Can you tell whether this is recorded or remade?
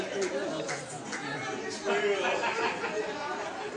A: recorded